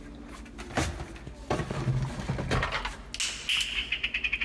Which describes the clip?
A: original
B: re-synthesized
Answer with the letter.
A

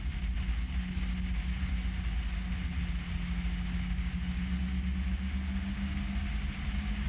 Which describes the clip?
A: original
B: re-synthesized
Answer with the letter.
A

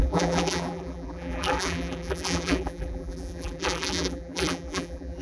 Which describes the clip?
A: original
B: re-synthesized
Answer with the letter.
B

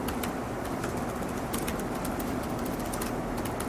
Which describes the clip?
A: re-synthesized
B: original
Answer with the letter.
B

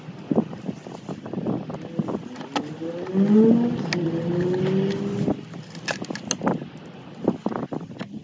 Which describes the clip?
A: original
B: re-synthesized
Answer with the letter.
A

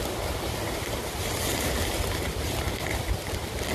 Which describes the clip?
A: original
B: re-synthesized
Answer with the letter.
A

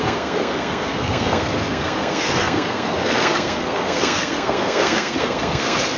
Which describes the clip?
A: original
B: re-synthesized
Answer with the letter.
B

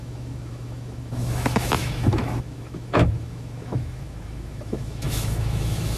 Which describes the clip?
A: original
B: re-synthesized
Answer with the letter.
B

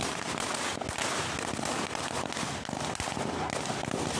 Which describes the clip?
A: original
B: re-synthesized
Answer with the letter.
A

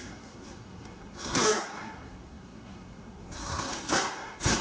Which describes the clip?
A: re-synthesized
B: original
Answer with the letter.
A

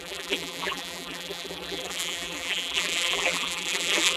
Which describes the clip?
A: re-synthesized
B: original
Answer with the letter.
A